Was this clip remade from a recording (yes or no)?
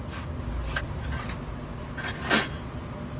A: no